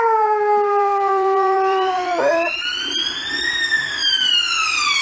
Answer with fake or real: fake